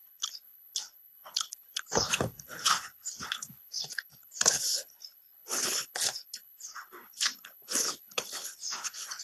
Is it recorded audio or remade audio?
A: remade